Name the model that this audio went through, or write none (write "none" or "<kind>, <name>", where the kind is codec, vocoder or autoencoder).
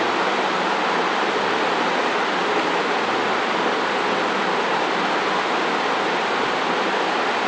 none